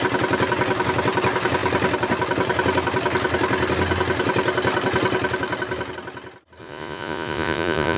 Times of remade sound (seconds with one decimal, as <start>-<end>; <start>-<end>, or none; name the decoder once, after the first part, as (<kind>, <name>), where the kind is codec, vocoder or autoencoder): 6.6-8.0 (vocoder, Vocos)

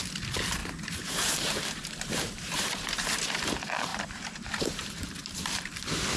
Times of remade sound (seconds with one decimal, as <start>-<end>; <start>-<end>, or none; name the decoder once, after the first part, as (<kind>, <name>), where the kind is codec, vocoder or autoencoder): 0.6-3.2 (vocoder, BigVGAN v2); 3.9-5.4

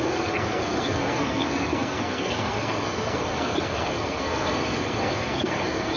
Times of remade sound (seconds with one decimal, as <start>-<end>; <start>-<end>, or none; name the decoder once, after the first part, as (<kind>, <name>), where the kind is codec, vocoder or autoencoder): 0.0-6.0 (codec, SNAC)

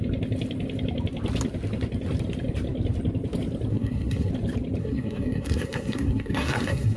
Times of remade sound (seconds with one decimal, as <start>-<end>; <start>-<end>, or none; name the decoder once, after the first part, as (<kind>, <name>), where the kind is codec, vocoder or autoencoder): 3.7-4.3 (codec, SNAC); 4.8-7.0